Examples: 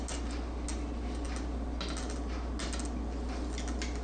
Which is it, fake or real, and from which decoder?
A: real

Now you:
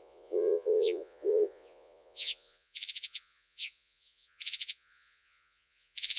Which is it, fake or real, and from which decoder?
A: fake, vocoder, Vocos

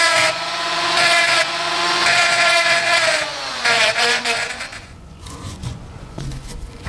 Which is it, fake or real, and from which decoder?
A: fake, vocoder, Vocos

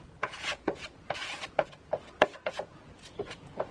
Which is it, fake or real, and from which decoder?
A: fake, vocoder, Vocos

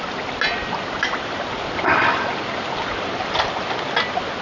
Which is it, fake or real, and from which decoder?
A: real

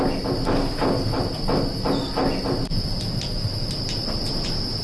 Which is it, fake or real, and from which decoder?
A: real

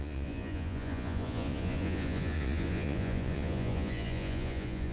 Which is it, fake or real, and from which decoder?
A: fake, vocoder, Vocos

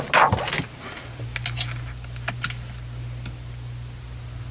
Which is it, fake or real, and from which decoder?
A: real